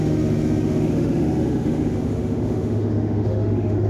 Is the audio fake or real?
fake